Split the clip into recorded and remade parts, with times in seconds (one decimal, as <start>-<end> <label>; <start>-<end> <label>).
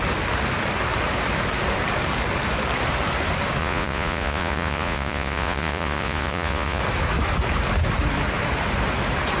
0.0-3.6 recorded; 3.6-6.8 remade; 6.8-9.4 recorded